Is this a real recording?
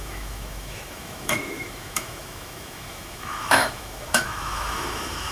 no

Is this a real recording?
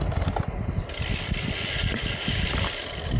yes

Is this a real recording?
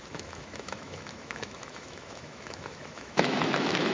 no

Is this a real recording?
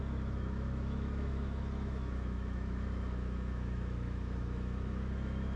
no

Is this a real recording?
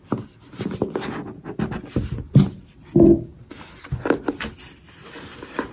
yes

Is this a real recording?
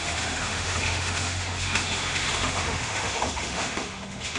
no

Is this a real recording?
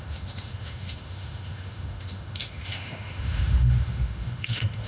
no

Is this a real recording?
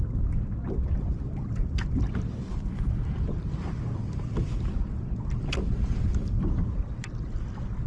yes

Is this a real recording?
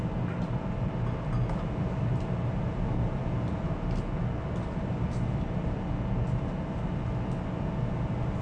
yes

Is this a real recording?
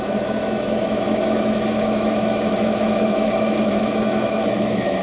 no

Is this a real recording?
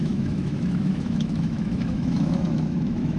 no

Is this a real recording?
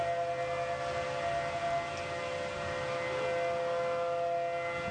yes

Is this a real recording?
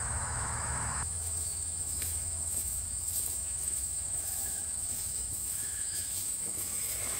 no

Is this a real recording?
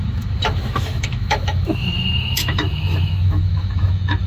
no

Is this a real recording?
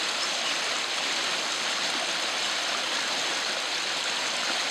yes